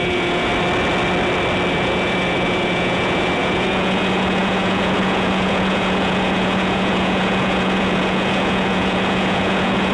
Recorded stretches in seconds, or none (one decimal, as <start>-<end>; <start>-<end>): 0.5-1.7